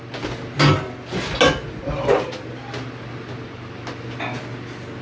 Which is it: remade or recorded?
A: recorded